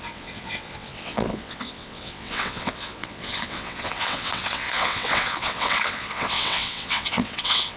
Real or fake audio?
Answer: fake